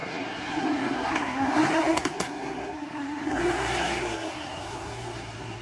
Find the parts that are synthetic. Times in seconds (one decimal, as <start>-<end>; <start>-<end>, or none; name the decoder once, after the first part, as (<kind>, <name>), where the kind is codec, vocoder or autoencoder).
0.0-5.6 (codec, SNAC)